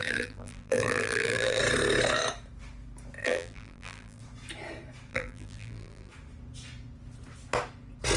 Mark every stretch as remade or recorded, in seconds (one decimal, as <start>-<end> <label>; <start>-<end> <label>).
0.0-1.6 remade; 1.6-3.2 recorded; 3.2-4.2 remade; 4.2-5.1 recorded; 5.1-6.1 remade; 6.1-8.2 recorded